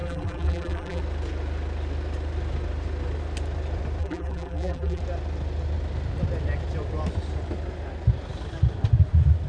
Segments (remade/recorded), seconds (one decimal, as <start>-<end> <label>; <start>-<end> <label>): 0.0-1.0 remade; 1.0-4.0 recorded; 4.0-5.0 remade; 5.0-9.5 recorded